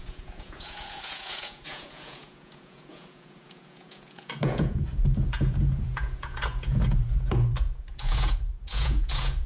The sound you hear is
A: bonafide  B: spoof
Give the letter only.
B